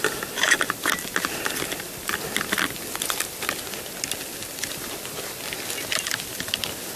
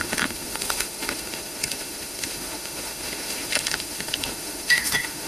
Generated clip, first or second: second